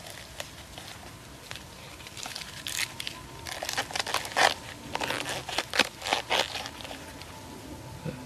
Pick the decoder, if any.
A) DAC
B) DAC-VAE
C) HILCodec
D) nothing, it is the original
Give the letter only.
D